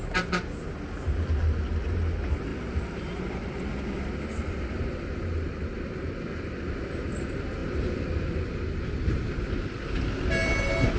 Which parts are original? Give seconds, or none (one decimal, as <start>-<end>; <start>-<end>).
0.0-7.6; 8.4-11.0

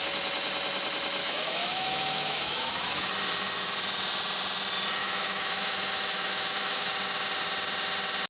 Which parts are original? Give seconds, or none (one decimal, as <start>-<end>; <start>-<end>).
0.0-1.2; 3.1-5.0; 6.9-8.3

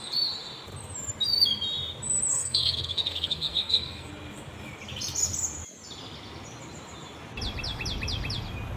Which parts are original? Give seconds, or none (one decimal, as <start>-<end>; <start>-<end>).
0.0-2.3; 4.1-8.8

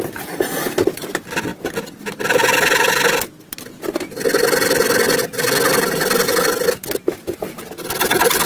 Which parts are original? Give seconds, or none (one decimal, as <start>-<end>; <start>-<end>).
0.0-8.5

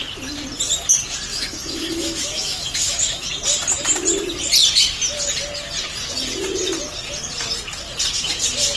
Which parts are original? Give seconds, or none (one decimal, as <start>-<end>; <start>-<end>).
0.0-1.3; 3.3-8.8

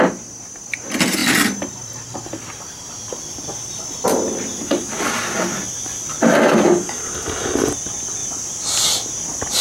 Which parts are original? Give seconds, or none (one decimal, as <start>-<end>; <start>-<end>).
0.0-1.2; 5.2-8.2

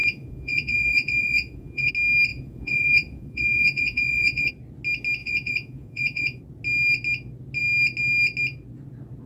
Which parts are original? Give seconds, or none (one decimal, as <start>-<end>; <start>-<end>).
1.9-2.3; 4.5-5.2; 6.4-9.3

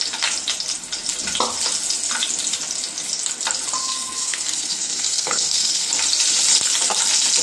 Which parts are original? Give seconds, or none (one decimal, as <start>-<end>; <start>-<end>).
0.0-3.8; 5.9-7.4